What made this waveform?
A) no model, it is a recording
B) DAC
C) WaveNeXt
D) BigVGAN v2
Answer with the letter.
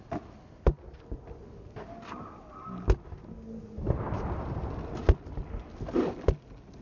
A